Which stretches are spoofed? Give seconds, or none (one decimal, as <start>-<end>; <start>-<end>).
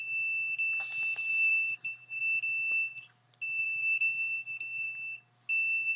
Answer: 1.3-2.2; 3.6-4.9